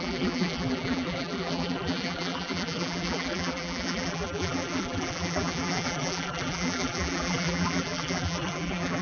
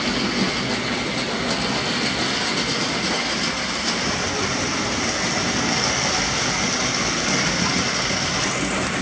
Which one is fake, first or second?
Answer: first